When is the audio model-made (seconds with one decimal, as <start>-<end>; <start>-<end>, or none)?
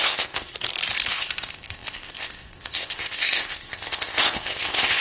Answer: 0.0-0.5; 1.1-5.0